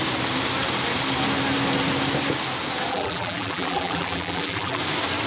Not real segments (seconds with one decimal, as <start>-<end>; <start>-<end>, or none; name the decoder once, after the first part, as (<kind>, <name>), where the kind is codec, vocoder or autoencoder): 2.9-4.8 (vocoder, BigVGAN v2)